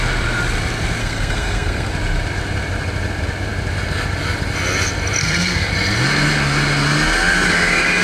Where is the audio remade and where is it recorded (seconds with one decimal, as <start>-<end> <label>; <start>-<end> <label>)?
0.0-1.0 recorded; 1.0-1.9 remade; 1.9-5.2 recorded; 5.2-5.7 remade; 5.7-8.0 recorded